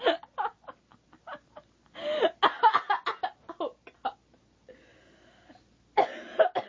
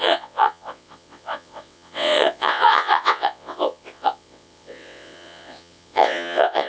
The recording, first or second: first